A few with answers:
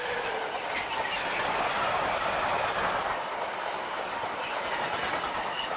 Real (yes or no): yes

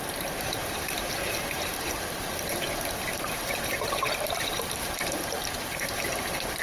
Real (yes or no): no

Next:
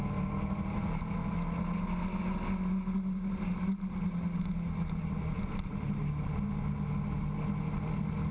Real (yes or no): yes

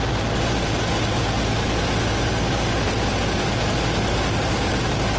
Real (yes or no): yes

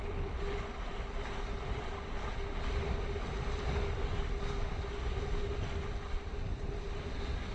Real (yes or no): yes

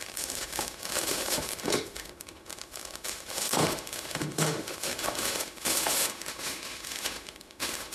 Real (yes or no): no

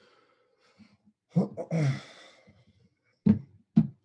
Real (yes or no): yes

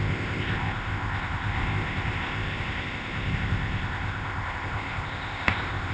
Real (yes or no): no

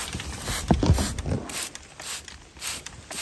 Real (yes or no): yes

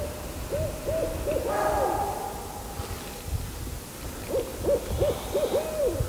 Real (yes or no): yes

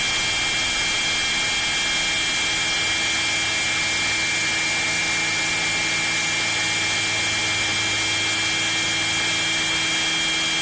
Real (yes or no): yes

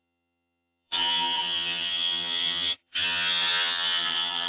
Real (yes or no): no